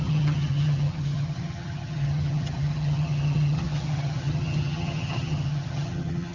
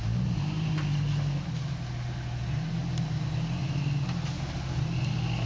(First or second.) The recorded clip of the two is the second